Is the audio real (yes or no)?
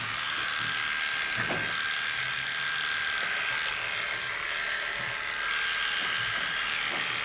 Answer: yes